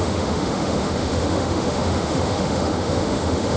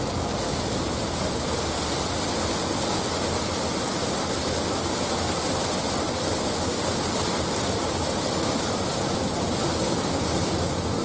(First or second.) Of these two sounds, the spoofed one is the first